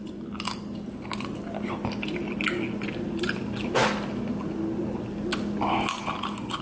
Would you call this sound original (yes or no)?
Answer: yes